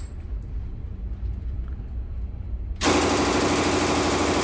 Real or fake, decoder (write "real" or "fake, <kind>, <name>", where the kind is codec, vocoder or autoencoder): real